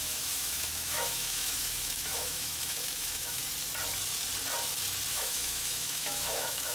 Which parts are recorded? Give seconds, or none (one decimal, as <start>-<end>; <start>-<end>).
3.4-5.1